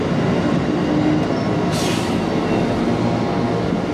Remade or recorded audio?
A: recorded